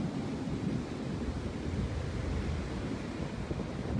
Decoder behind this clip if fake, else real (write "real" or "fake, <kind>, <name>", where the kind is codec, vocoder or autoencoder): real